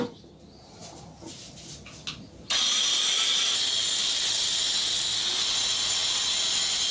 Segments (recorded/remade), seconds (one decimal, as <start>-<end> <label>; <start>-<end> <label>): 0.0-6.9 recorded